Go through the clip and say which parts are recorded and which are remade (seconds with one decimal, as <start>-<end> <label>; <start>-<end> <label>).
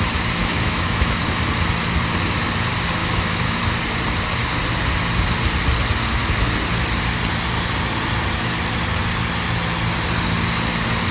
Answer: 0.0-0.4 recorded; 0.4-1.2 remade; 1.2-3.0 recorded; 3.0-3.6 remade; 3.6-11.1 recorded